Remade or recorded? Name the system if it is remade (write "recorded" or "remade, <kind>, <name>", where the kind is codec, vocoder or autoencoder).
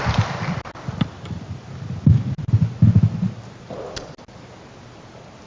recorded